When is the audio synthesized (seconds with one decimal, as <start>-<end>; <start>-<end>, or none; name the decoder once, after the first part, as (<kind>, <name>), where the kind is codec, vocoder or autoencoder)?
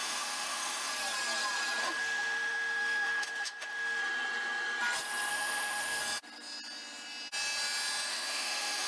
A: 0.0-0.9 (autoencoder, DAC-VAE); 1.8-4.0; 5.3-6.0; 8.1-8.9